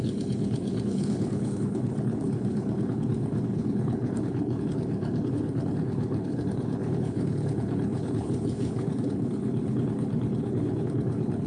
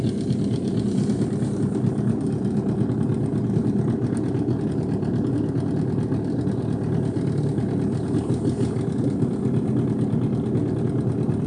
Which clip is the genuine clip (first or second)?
second